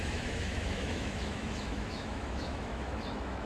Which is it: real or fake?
fake